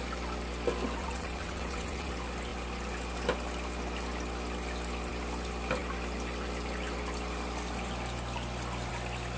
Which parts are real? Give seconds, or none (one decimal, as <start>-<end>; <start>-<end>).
0.0-1.0; 2.1-9.4